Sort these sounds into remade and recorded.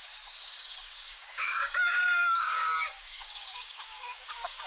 remade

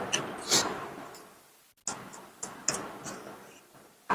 recorded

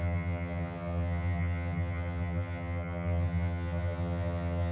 remade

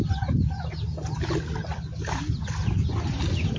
recorded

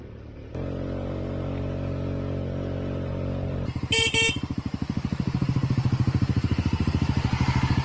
recorded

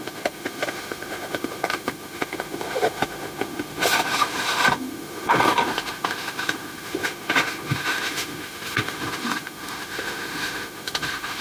remade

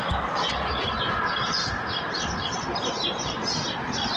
recorded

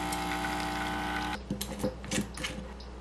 recorded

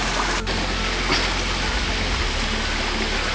recorded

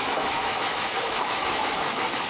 remade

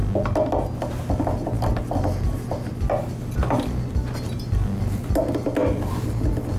recorded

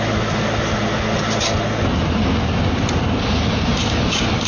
recorded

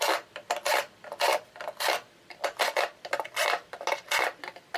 recorded